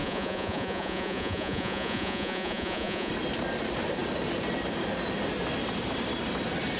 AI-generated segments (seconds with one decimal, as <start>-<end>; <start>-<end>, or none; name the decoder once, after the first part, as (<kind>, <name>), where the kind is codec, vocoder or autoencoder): 0.0-3.1 (vocoder, Vocos)

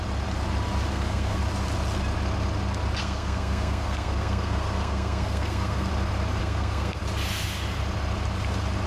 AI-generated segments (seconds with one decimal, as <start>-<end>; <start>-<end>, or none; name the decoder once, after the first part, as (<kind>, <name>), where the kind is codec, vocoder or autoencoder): 0.9-1.4 (codec, SNAC); 3.0-5.9; 6.4-7.0